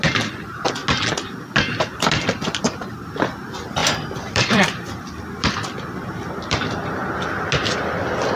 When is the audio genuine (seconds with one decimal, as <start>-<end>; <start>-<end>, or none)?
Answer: 0.0-3.8; 6.6-8.4